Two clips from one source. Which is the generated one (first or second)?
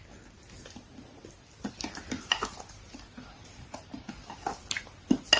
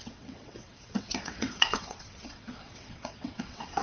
second